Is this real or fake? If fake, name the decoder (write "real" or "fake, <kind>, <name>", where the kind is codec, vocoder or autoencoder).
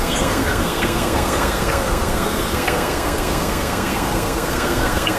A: fake, codec, SNAC